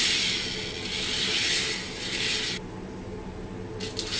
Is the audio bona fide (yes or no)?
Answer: yes